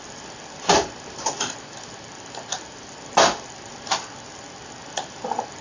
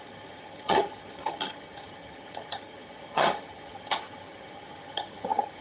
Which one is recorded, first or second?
first